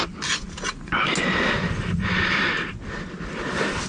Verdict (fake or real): real